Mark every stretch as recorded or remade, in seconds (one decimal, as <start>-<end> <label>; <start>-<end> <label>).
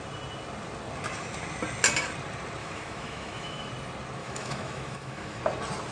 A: 0.0-2.6 recorded; 2.6-3.7 remade; 3.7-4.2 recorded; 4.2-5.4 remade; 5.4-5.9 recorded